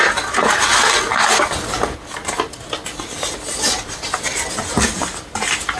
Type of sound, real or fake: real